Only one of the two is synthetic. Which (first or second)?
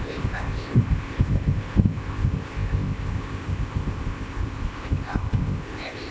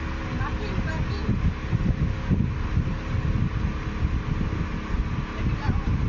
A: first